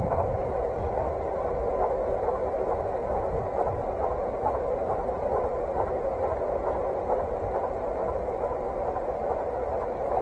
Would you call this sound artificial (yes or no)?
no